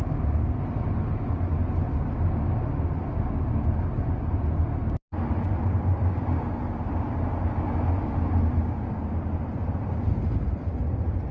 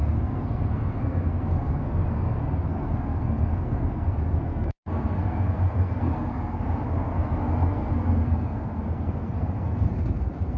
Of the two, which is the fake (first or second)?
second